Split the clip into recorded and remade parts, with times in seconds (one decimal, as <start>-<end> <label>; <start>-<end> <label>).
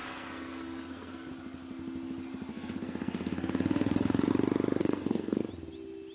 0.0-1.3 remade; 1.3-2.5 recorded; 2.5-4.3 remade; 4.3-4.8 recorded; 4.8-5.4 remade; 5.4-6.1 recorded